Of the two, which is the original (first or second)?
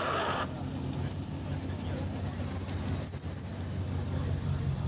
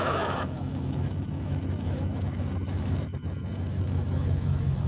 first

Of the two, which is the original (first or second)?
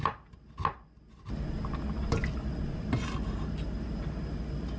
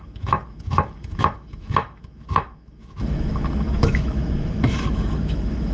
first